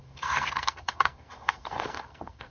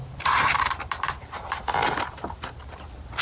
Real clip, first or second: second